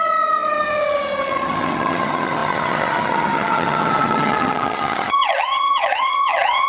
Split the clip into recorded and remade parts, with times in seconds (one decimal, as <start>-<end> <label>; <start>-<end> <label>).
0.0-6.7 remade